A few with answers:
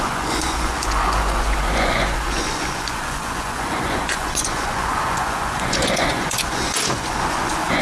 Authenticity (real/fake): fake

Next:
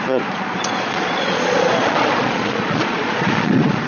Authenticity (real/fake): fake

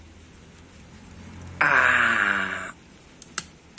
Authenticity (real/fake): real